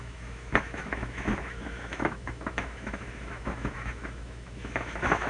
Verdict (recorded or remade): remade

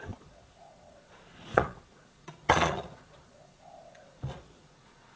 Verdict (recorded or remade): remade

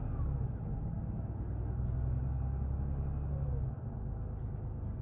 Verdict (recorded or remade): recorded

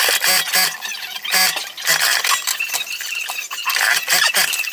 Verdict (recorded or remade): recorded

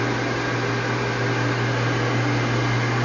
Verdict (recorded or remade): recorded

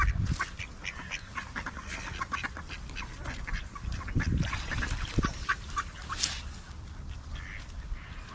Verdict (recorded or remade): recorded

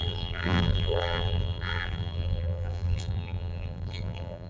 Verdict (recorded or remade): remade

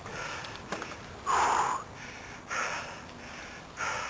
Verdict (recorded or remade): recorded